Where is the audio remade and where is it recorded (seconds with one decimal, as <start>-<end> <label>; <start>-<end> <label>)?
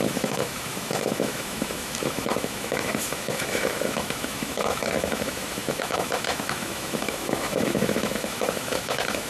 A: 0.0-9.3 remade